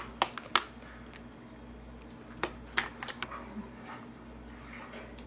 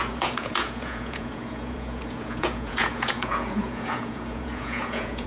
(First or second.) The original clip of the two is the first